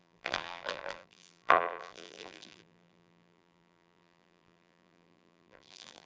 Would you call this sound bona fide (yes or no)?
no